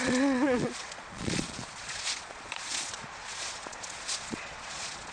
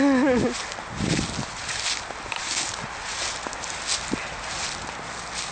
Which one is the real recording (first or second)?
second